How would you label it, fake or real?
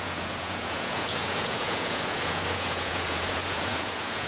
fake